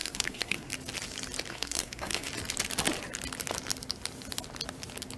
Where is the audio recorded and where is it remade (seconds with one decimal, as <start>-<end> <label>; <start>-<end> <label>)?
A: 0.0-0.7 remade; 0.7-1.5 recorded; 1.5-2.3 remade; 2.3-5.2 recorded